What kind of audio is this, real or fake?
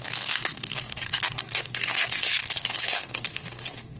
fake